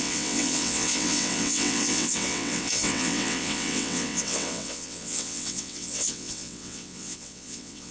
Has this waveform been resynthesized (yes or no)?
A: yes